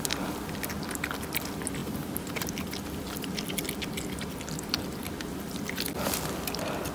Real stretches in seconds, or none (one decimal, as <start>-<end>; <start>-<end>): 0.0-6.9